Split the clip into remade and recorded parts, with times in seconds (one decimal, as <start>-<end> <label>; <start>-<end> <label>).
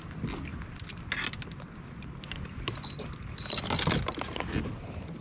0.0-5.2 recorded